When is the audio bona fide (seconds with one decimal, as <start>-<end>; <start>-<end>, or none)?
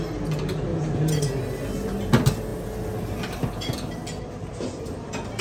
0.0-0.7; 1.2-5.4